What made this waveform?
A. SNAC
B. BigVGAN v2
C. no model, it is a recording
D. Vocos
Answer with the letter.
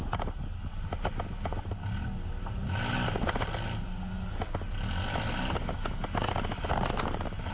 C